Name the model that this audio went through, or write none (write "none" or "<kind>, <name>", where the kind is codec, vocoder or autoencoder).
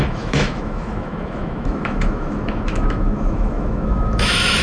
autoencoder, DAC-VAE